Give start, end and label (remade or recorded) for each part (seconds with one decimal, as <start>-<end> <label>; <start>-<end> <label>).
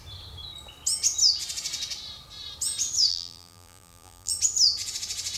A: 0.0-3.1 recorded; 3.1-4.3 remade; 4.3-5.4 recorded